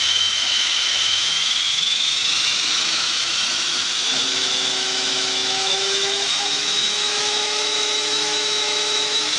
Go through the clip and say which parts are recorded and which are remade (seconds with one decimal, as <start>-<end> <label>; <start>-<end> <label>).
0.0-9.4 remade